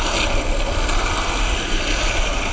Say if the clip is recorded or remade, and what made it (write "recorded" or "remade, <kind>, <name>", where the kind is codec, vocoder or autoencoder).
recorded